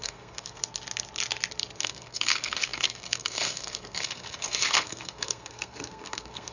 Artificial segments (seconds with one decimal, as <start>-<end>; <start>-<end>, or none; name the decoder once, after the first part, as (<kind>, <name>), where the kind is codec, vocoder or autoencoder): 0.0-0.6 (codec, SNAC); 1.8-6.5

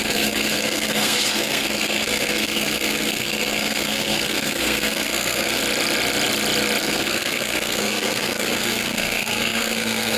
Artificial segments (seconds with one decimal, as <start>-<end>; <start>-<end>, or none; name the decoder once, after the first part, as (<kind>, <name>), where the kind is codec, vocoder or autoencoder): 0.0-5.6 (codec, SNAC); 6.8-10.2

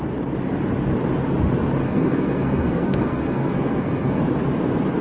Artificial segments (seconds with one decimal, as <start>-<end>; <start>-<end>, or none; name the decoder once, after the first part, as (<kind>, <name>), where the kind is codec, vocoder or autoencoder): 1.8-4.2 (codec, SNAC)

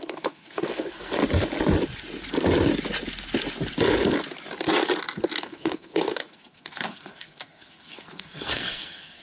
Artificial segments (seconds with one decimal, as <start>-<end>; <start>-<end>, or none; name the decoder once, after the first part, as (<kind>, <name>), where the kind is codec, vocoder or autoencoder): 0.0-1.2 (codec, SNAC); 5.4-9.2

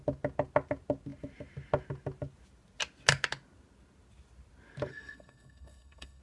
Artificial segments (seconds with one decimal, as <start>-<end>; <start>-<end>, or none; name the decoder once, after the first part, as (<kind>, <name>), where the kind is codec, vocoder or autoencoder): 4.9-6.2 (codec, SNAC)

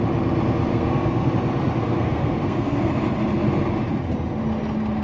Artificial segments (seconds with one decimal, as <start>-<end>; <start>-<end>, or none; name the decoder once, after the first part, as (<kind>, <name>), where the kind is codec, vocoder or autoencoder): 0.7-1.3 (codec, SNAC); 1.8-2.9

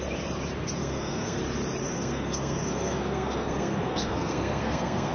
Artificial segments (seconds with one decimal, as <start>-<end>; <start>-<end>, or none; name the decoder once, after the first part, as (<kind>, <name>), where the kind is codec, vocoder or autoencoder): 0.8-1.4 (codec, SNAC); 1.8-5.1